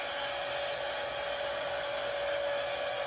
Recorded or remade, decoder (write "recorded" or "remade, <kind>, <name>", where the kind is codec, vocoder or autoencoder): recorded